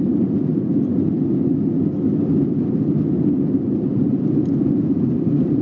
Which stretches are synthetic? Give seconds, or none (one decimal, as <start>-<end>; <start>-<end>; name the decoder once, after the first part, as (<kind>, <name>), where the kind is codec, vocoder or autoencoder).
0.0-0.5 (vocoder, BigVGAN v2); 3.9-5.6